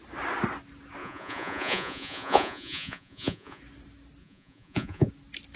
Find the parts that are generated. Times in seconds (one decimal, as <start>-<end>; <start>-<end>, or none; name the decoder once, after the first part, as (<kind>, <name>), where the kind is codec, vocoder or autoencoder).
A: 1.0-3.6 (vocoder, Vocos); 4.2-5.1